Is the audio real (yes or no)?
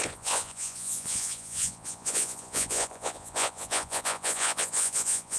no